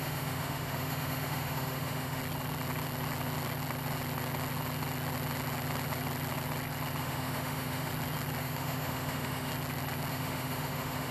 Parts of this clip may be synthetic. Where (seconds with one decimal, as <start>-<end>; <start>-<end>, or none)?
0.0-2.2; 7.0-7.9; 8.4-9.5; 10.1-11.1

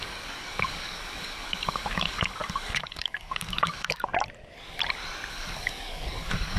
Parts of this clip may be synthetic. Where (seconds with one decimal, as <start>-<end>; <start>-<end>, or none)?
0.0-4.1; 5.3-6.6